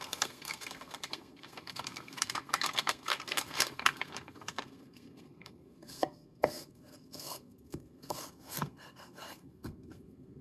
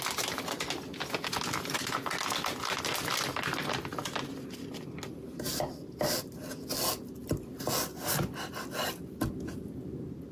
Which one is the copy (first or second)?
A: first